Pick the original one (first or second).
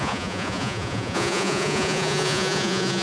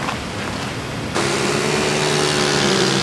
second